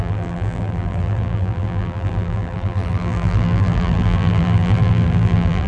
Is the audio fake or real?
fake